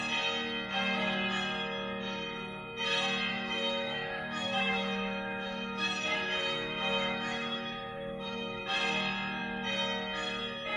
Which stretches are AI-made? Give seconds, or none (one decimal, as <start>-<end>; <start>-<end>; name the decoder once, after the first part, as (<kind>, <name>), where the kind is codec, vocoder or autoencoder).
3.3-8.6 (autoencoder, DAC-VAE)